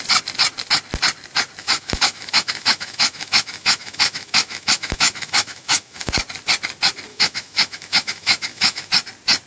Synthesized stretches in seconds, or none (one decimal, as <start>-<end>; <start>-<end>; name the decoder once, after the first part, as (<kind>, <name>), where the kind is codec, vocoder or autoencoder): 1.6-6.1 (autoencoder, DAC-VAE); 7.1-8.9